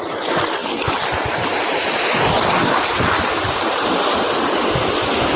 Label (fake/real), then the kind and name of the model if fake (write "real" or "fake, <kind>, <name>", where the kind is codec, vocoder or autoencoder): fake, vocoder, BigVGAN v2